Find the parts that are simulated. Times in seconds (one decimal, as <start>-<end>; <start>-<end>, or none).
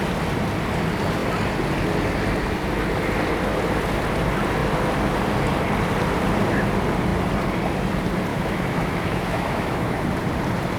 8.3-10.0